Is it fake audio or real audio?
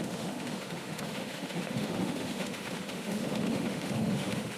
fake